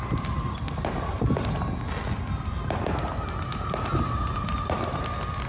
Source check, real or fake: real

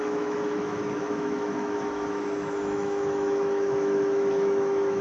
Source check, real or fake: fake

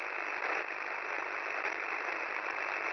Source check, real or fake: real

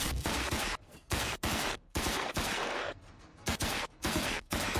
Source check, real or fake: fake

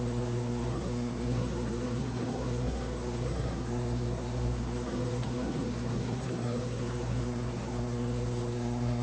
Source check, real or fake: fake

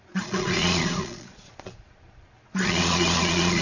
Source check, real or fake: fake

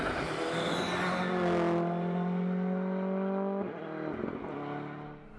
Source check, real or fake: real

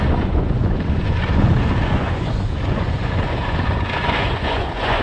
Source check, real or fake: fake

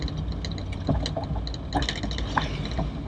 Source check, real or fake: real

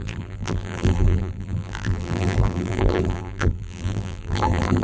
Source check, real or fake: fake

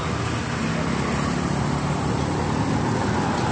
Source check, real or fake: real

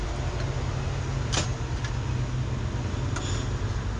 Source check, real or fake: real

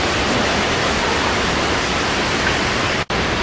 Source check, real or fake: real